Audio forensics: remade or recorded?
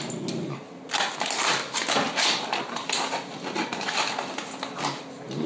recorded